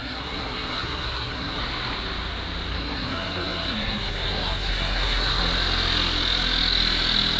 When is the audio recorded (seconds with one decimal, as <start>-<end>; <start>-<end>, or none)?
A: 1.6-2.7; 5.4-7.4